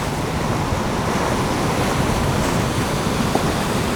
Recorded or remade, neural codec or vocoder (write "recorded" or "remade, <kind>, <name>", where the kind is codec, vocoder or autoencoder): recorded